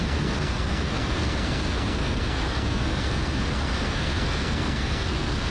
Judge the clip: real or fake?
fake